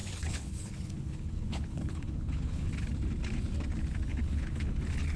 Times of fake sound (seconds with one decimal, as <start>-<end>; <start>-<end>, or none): 0.0-2.7; 4.1-4.8